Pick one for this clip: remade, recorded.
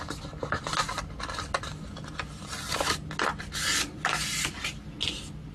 recorded